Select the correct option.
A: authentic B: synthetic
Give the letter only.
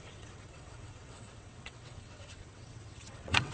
B